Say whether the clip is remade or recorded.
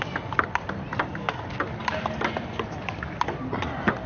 recorded